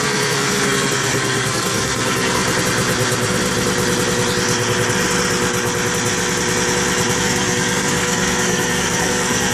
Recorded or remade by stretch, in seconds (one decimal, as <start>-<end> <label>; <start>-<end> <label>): 0.0-2.4 remade; 2.4-7.2 recorded; 7.2-9.5 remade

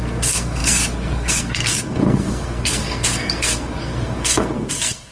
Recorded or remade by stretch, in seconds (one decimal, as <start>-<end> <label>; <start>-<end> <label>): 0.0-5.1 remade

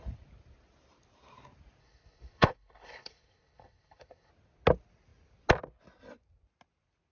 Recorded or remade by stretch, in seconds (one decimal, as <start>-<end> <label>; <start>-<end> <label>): 0.0-1.8 recorded; 1.8-4.3 remade; 4.3-7.1 recorded

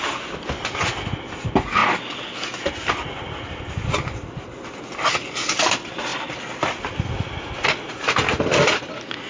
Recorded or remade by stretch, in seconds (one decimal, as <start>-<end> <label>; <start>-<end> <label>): 0.0-9.3 recorded

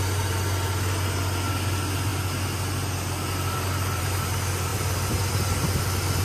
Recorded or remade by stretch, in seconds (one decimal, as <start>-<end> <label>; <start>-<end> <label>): 0.0-6.2 recorded

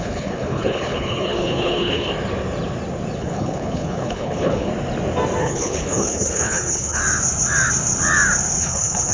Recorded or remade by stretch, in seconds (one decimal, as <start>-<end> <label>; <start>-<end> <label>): 0.0-2.1 remade; 2.1-3.2 recorded; 3.2-4.7 remade; 4.7-5.4 recorded; 5.4-7.0 remade; 7.0-8.6 recorded; 8.6-9.1 remade